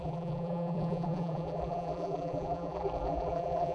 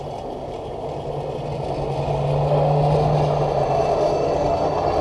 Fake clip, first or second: first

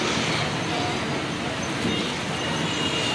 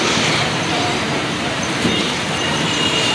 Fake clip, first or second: second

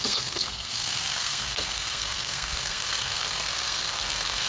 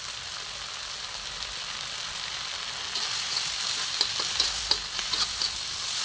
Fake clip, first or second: first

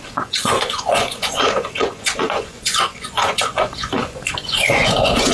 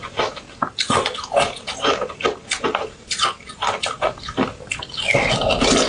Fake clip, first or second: first